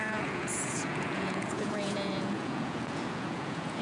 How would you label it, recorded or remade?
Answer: remade